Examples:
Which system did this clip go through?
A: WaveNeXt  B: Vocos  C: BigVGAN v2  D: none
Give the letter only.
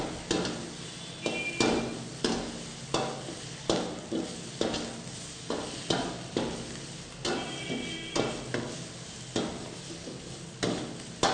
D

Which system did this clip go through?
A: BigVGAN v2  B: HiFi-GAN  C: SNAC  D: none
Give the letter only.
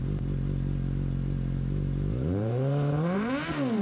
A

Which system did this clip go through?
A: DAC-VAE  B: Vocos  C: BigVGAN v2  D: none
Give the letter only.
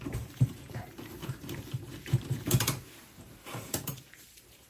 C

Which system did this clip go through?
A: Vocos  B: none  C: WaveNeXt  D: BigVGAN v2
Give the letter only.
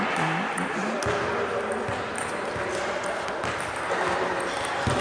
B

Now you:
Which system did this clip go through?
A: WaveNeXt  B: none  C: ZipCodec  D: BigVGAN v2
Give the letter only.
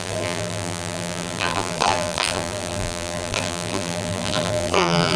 D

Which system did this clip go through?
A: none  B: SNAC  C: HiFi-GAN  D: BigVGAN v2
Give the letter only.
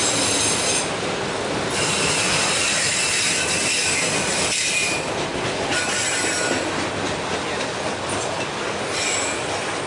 D